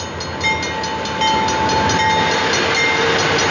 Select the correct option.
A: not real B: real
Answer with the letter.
B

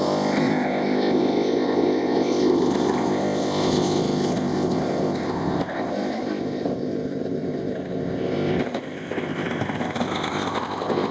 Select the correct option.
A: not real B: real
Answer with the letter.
A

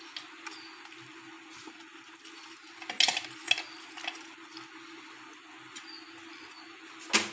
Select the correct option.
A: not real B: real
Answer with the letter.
B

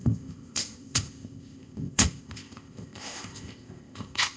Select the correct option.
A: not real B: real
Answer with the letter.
A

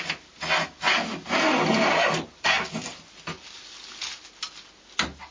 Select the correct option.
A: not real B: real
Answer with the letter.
B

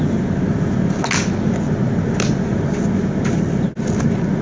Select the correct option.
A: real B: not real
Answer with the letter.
A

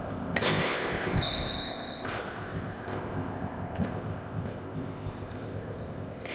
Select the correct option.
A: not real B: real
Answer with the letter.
A